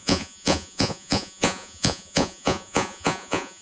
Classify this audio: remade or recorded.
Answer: remade